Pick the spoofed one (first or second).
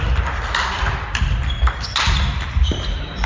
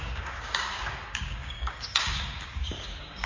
second